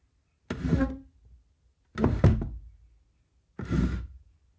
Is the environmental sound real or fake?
real